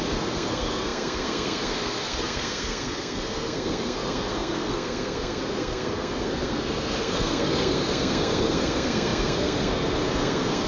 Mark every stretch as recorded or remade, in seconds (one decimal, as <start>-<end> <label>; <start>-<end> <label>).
0.0-10.7 remade